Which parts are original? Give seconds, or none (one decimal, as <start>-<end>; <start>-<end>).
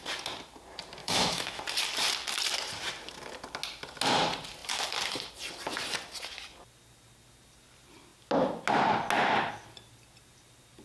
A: 0.0-1.0; 1.6-10.8